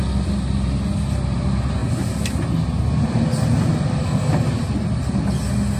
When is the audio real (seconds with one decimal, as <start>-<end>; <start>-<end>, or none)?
0.0-5.8